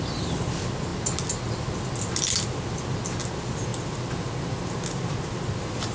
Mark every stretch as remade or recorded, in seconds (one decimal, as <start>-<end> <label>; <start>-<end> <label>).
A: 0.0-5.9 recorded